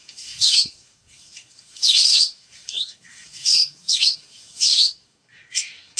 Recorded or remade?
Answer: remade